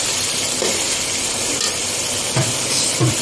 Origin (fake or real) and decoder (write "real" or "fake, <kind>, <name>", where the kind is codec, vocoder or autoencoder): fake, vocoder, BigVGAN v2